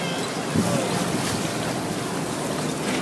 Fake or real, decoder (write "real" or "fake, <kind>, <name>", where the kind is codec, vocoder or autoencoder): real